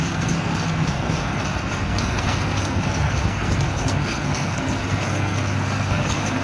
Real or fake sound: fake